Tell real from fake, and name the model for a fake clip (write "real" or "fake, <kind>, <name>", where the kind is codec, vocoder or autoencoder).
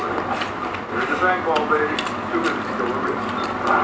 real